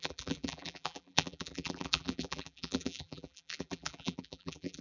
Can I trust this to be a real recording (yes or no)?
no